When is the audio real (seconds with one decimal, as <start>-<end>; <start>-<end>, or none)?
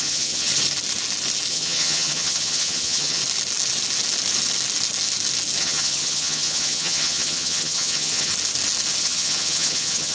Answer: 0.5-1.5; 3.2-5.6; 8.3-9.0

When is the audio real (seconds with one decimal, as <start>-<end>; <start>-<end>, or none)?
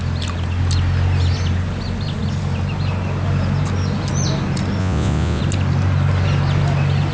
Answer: 0.0-4.8; 5.4-7.1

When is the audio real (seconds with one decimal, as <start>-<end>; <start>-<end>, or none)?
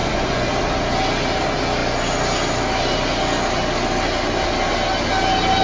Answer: 0.5-5.6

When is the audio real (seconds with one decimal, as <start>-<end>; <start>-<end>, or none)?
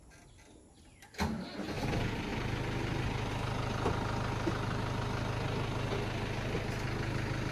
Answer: 0.0-7.5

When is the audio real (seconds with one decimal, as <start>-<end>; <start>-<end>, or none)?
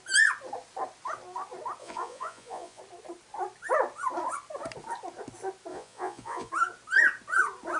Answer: 0.0-1.8; 2.8-5.7; 6.5-7.8